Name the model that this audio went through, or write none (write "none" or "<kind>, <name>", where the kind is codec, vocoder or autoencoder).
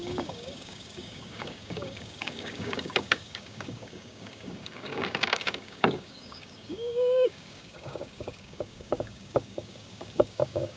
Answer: codec, DAC